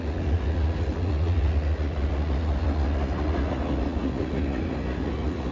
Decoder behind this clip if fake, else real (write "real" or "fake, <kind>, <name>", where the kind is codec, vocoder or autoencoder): fake, vocoder, Vocos